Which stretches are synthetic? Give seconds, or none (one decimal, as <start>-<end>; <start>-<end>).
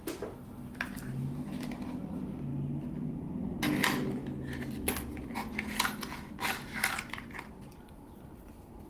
none